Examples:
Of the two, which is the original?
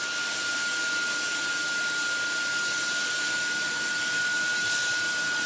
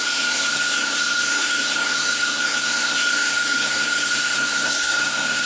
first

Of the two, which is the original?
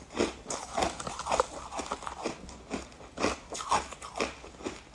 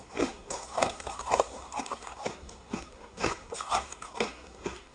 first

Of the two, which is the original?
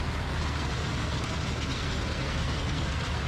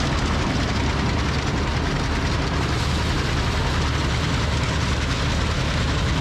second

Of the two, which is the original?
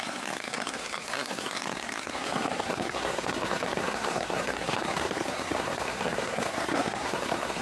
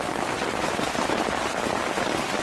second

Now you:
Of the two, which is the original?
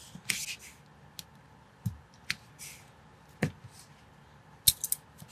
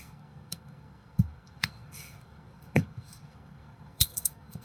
first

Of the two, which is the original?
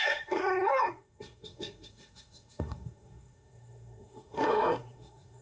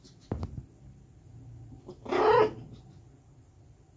second